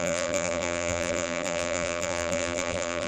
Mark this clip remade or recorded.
remade